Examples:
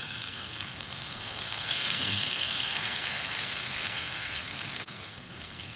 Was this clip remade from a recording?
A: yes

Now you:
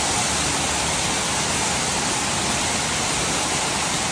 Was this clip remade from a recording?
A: no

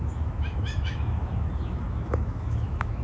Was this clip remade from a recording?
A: yes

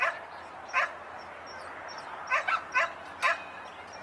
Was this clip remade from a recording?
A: no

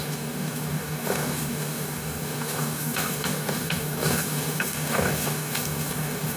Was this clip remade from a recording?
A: yes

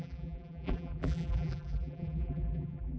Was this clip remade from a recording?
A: yes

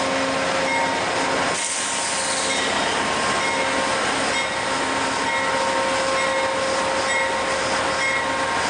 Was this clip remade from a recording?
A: no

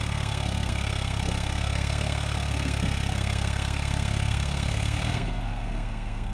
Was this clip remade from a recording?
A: yes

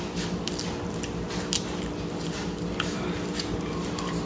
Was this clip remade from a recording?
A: no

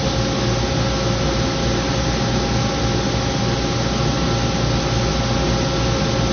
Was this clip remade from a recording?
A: no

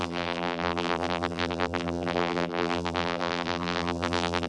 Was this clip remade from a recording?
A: yes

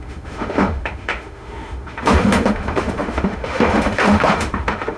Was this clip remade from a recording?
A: yes